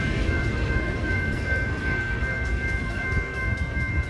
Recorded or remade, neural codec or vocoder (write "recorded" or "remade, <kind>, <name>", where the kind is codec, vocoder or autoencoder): remade, codec, SNAC